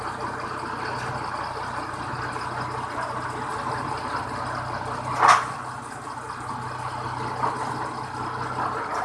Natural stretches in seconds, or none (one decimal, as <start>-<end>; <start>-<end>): 0.0-9.0